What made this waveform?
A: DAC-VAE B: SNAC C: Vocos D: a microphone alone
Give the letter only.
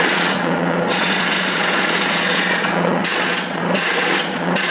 C